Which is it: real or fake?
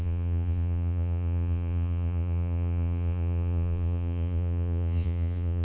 fake